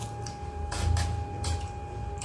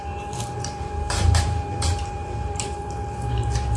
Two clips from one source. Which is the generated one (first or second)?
second